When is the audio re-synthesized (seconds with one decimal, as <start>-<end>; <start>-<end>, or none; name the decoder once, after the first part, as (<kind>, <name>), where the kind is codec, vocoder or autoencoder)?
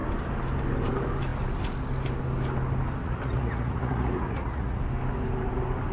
3.0-4.8 (vocoder, Vocos)